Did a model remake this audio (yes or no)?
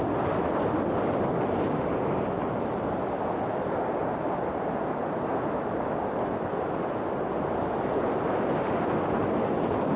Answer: no